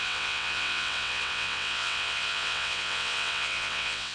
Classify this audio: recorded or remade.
remade